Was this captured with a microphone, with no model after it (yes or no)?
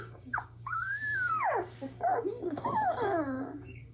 no